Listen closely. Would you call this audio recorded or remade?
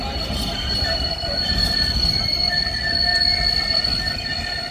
recorded